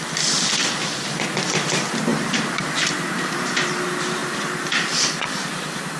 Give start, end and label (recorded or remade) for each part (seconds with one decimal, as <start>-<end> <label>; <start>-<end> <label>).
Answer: 0.0-2.1 recorded; 2.1-3.7 remade; 3.7-6.0 recorded